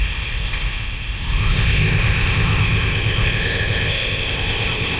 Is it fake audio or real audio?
fake